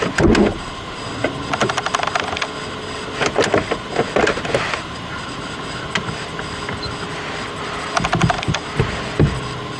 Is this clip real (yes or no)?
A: yes